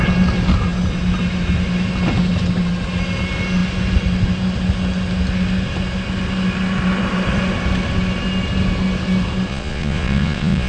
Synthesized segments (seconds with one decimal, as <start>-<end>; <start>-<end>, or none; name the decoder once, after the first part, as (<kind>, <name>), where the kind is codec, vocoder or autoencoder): 9.5-10.7 (vocoder, Vocos)